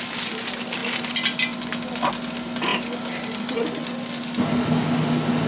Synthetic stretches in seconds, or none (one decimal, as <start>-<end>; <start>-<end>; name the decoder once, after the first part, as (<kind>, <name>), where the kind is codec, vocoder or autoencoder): none